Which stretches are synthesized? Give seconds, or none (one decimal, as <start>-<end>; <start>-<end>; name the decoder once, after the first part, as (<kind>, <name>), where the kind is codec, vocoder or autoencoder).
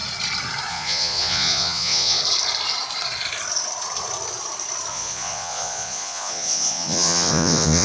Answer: 0.7-2.2 (vocoder, Vocos); 4.9-7.8